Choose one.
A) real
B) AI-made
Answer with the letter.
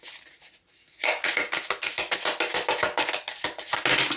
A